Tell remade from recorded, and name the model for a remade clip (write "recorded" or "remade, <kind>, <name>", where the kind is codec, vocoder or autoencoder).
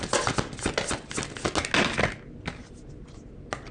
recorded